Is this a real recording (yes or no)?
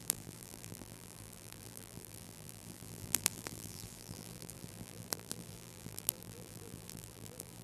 no